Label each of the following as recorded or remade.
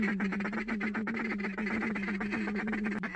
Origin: recorded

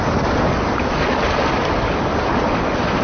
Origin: recorded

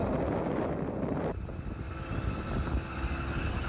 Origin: recorded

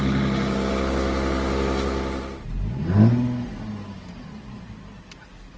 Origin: recorded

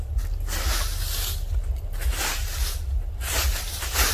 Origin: recorded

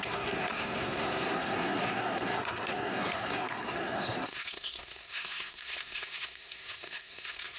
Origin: remade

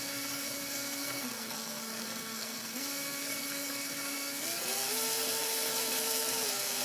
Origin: remade